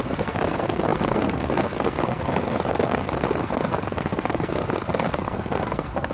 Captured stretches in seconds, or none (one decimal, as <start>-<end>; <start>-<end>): none